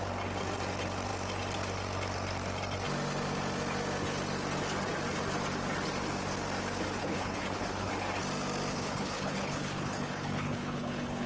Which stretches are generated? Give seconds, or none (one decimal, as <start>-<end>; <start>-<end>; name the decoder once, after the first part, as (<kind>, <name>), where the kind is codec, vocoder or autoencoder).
7.0-7.9 (codec, HILCodec); 8.7-11.3

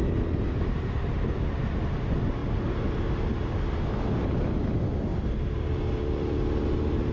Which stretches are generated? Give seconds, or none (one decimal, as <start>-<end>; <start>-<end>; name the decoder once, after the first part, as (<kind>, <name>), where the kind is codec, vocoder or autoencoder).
none